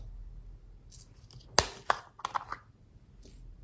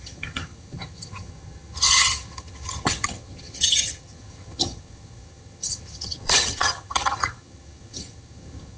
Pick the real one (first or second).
first